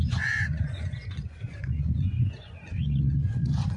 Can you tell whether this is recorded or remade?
remade